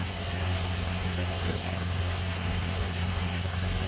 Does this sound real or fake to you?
fake